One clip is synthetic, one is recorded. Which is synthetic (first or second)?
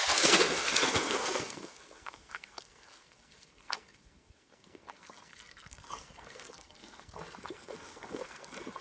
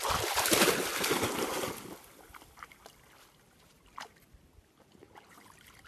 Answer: first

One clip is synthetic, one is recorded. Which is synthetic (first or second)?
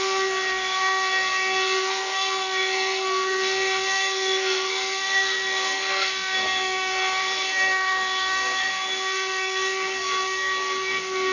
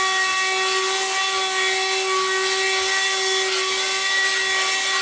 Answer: first